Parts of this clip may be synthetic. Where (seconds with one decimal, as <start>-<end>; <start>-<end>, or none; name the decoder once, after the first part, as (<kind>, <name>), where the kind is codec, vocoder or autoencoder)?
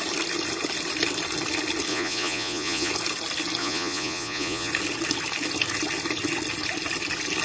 1.9-2.9 (vocoder, Vocos); 3.6-4.7